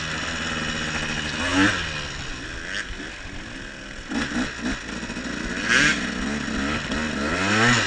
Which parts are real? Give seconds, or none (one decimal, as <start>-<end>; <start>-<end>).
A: 0.0-7.9